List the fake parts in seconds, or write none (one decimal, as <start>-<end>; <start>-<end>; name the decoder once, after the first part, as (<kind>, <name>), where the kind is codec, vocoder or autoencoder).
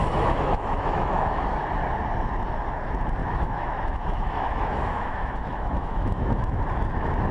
0.0-1.4 (autoencoder, DAC-VAE); 3.2-6.6